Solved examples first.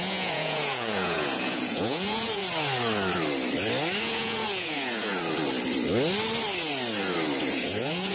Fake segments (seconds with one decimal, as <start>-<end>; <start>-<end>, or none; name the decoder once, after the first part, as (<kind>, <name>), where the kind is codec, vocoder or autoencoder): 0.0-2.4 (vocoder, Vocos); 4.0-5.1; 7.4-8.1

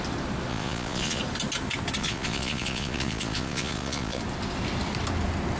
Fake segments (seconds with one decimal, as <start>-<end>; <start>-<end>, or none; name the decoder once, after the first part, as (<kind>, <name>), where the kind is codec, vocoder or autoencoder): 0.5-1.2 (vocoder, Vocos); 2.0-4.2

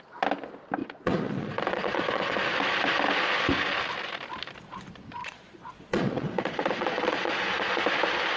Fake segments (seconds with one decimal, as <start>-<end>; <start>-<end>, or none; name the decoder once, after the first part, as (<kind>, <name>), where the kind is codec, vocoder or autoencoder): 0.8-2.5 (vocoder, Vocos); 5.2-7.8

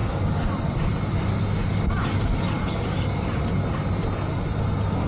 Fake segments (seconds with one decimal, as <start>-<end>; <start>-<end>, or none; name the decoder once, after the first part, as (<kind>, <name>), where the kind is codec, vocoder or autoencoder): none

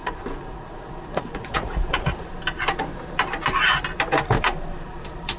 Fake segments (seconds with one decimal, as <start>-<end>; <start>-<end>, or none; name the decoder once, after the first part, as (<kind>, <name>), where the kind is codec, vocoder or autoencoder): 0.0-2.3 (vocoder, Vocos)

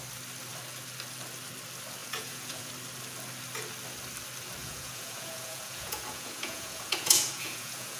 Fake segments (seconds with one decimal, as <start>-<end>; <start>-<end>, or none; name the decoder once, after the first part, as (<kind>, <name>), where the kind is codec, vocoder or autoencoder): 2.0-2.7 (vocoder, Vocos); 4.6-8.0

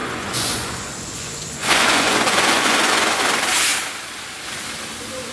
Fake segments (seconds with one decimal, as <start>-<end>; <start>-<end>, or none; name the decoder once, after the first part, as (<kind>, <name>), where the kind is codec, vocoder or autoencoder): 0.0-3.2 (vocoder, Vocos)

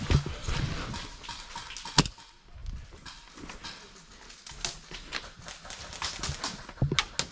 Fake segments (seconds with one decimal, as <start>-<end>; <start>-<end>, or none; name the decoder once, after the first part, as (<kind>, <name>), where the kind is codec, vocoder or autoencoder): none